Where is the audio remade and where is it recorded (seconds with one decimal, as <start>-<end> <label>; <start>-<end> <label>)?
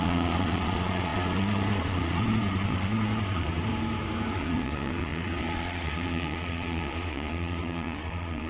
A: 0.0-3.7 remade; 3.7-4.3 recorded; 4.3-8.5 remade